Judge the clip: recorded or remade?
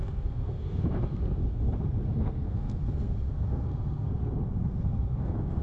remade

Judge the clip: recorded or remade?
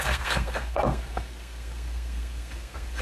remade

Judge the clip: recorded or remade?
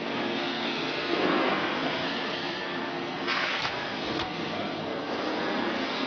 remade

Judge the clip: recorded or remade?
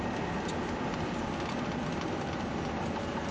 recorded